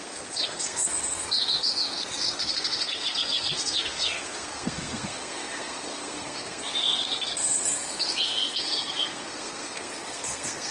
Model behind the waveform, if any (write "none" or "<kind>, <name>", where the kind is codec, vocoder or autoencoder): codec, SNAC